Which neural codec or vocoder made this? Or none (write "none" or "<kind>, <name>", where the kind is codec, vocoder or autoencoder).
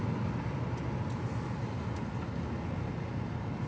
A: none